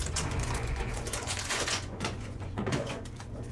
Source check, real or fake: fake